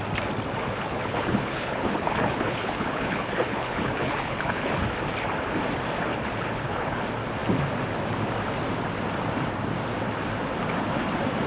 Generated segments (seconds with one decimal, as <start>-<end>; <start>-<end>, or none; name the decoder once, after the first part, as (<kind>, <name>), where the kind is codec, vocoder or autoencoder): 0.8-4.8 (codec, HILCodec); 6.1-7.0